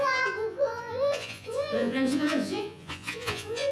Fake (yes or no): yes